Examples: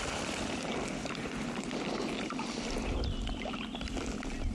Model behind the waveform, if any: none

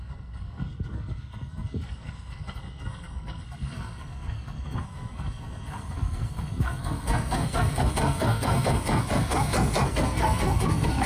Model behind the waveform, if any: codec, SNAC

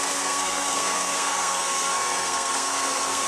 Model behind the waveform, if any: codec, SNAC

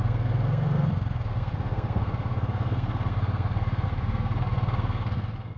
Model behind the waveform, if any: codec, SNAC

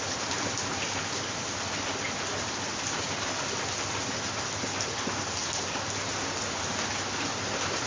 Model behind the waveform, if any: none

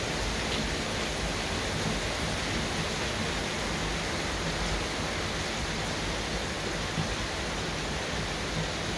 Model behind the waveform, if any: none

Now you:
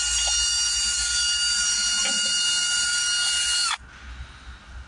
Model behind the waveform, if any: none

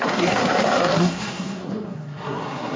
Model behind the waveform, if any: codec, SNAC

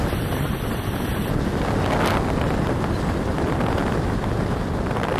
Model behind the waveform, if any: none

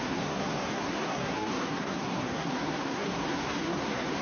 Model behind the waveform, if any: codec, SNAC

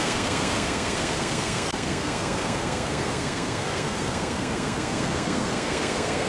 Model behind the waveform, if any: codec, SNAC